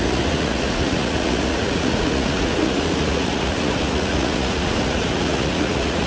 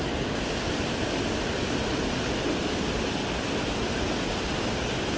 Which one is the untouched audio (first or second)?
second